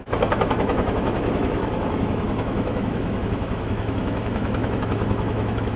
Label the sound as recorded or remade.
remade